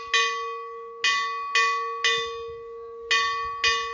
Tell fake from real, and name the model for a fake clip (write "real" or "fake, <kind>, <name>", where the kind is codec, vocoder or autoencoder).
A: real